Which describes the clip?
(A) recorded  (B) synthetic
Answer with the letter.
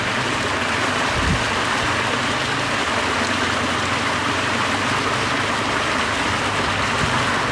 A